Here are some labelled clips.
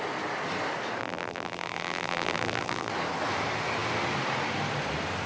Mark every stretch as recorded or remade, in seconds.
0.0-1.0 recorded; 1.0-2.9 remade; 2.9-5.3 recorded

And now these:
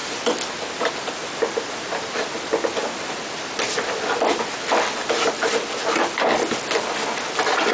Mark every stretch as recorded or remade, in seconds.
0.0-7.7 recorded

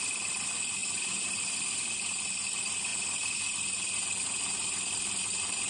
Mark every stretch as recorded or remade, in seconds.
0.0-0.8 recorded; 0.8-1.3 remade; 1.3-5.7 recorded

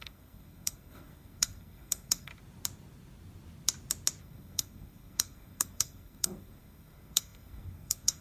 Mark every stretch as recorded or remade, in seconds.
0.0-2.3 remade; 2.3-4.2 recorded; 4.2-8.2 remade

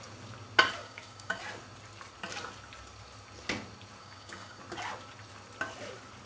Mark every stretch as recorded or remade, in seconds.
0.0-0.8 recorded; 0.8-1.4 remade; 1.4-4.0 recorded; 4.0-4.6 remade; 4.6-6.3 recorded

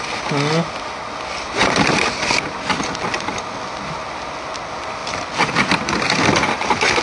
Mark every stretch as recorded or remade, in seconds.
0.0-1.6 recorded; 1.6-3.6 remade; 3.6-5.0 recorded; 5.0-6.0 remade; 6.0-7.0 recorded